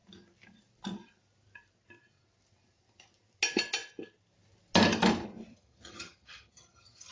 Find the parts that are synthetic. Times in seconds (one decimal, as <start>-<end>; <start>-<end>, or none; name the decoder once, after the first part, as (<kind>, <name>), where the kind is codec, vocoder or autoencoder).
5.5-7.1 (vocoder, HiFi-GAN)